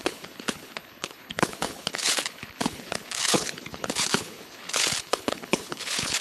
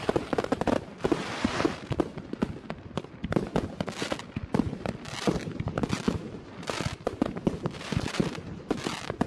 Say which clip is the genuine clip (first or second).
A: second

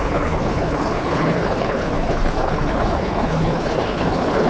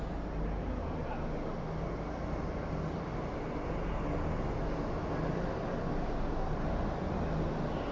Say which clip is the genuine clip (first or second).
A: second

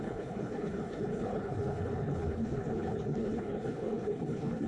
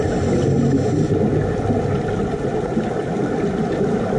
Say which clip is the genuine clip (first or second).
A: second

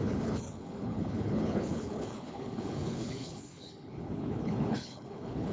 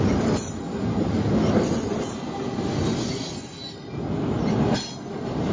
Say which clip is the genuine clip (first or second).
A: second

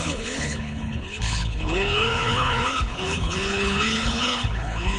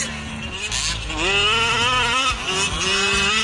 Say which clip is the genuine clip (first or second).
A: second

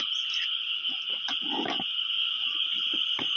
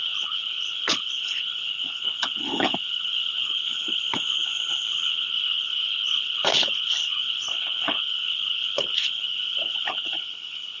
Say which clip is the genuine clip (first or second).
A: first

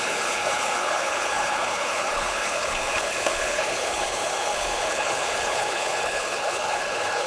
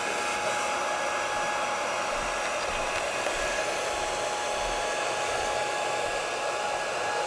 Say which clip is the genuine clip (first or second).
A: second